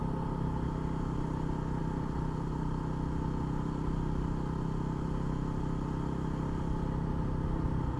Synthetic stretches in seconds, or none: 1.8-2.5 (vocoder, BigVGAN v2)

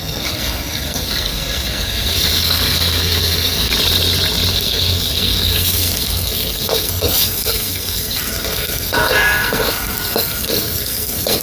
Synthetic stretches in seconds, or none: 0.0-3.7 (codec, SNAC); 4.5-11.4

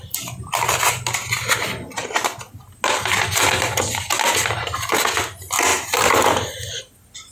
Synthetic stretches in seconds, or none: 5.7-6.8 (vocoder, BigVGAN v2)